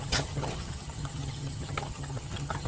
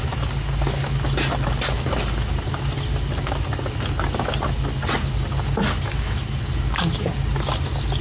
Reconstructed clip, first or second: first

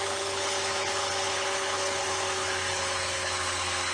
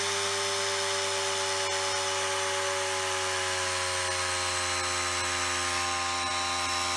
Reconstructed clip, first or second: first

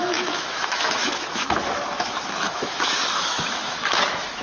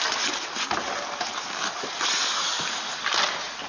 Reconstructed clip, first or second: first